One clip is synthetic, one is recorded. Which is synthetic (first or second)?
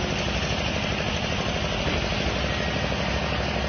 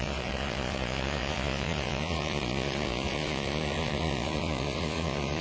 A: second